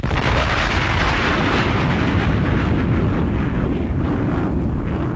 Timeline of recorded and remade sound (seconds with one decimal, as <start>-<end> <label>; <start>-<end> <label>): 0.0-5.2 recorded